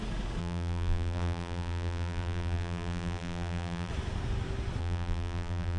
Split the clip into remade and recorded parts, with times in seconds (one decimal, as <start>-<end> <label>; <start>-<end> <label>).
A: 0.0-0.4 recorded; 0.4-3.9 remade; 3.9-4.8 recorded; 4.8-5.8 remade